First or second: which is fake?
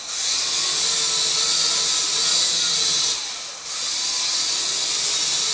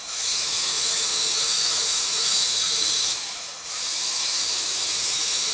second